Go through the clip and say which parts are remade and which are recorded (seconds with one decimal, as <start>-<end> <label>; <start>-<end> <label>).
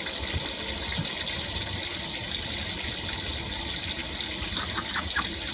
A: 0.0-5.5 recorded